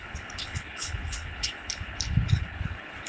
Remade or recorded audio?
remade